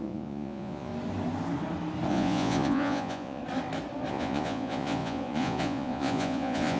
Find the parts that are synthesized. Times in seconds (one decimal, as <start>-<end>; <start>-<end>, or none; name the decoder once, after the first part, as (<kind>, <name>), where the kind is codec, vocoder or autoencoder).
0.0-0.9 (vocoder, Vocos); 2.1-3.4; 4.1-6.8